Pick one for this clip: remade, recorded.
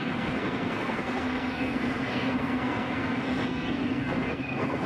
remade